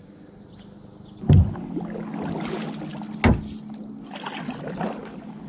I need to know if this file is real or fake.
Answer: real